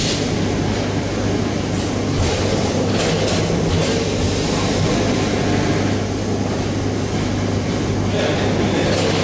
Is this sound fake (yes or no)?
no